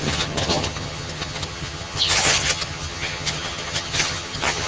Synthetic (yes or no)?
yes